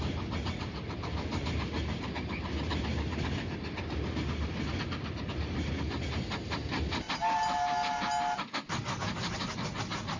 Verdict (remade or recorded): recorded